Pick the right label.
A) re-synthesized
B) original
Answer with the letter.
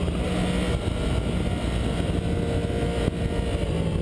B